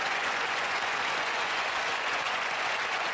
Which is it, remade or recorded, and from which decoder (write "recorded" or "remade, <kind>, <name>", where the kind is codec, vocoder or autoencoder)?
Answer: remade, vocoder, Vocos